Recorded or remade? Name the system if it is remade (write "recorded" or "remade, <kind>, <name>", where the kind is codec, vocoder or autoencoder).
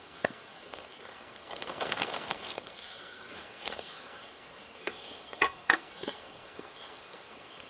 remade, codec, SNAC